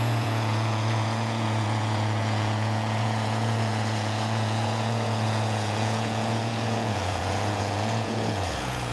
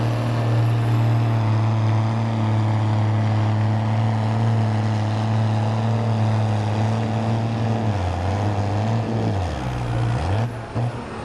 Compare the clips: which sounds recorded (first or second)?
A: second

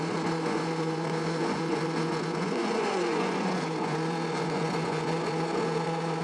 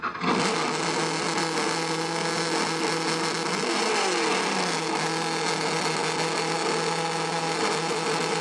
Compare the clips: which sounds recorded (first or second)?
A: second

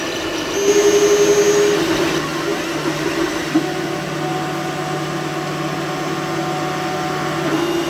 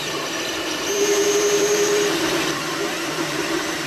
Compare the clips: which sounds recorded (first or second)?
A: first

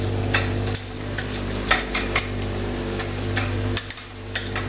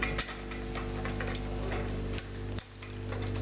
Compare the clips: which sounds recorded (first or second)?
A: second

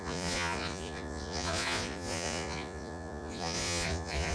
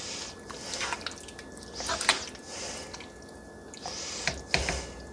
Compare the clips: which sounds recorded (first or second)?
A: second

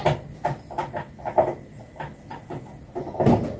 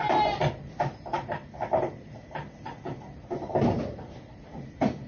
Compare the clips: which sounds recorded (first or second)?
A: first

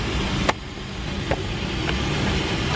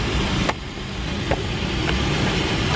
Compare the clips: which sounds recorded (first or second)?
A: first